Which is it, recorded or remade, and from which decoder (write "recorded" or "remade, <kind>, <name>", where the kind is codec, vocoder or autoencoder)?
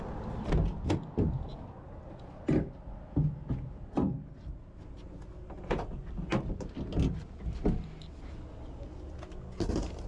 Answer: recorded